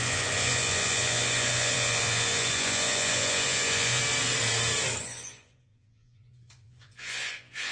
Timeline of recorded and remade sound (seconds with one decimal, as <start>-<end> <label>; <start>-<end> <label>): 0.0-4.0 remade; 4.0-5.0 recorded; 5.0-7.7 remade